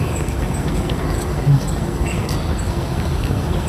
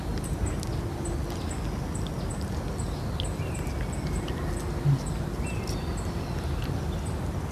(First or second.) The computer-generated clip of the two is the first